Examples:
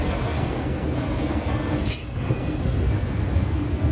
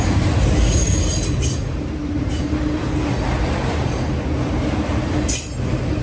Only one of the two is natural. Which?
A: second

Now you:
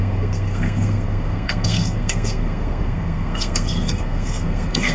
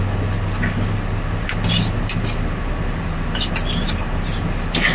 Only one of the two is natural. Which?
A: second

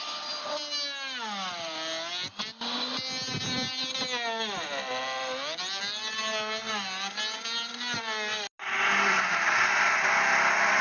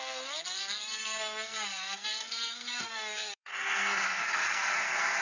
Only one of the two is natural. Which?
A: first